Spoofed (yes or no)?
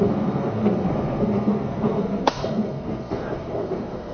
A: yes